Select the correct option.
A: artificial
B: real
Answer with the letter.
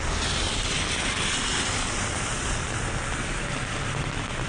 B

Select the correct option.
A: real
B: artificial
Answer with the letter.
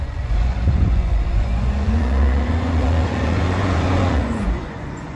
B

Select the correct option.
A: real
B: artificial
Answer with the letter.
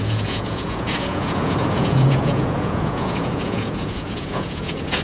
B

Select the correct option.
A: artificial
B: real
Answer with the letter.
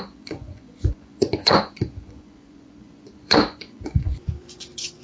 A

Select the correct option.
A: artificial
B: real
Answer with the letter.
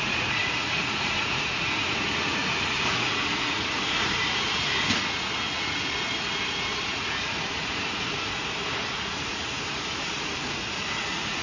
A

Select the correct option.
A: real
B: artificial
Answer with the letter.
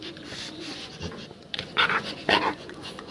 B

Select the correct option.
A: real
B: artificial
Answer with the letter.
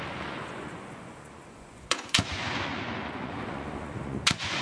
B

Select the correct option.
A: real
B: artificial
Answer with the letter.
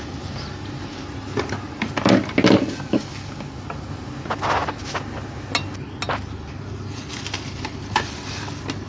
A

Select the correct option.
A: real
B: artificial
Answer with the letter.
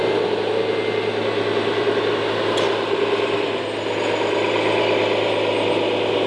A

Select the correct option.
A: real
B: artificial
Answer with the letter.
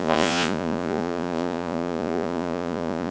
B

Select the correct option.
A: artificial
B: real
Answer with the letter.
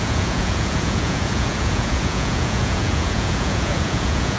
A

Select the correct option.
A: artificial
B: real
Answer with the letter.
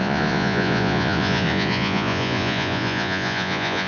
A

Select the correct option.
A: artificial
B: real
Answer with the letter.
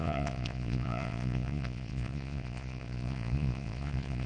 A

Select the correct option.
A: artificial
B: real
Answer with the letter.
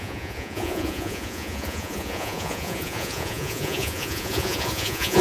A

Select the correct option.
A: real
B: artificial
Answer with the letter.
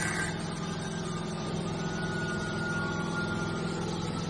A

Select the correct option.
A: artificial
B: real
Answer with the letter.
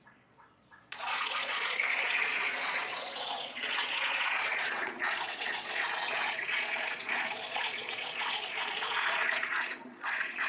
A